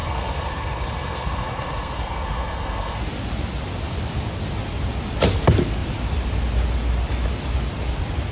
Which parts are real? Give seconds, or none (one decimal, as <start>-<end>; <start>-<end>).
3.0-8.3